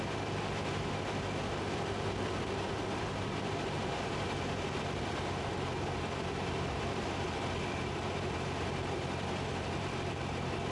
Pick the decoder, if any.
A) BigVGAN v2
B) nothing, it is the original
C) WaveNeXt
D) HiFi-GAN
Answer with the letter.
A